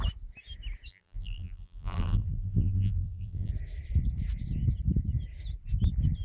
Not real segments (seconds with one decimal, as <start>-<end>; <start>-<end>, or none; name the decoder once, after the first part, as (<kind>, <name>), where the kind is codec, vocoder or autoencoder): 0.9-3.5 (vocoder, BigVGAN v2)